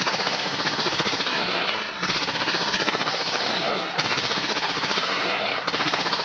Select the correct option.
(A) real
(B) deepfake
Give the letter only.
B